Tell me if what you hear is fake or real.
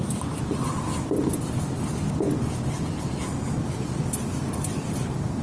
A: real